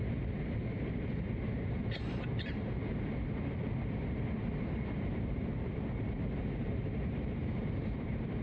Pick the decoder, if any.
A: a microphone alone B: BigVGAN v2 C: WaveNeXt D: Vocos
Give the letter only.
B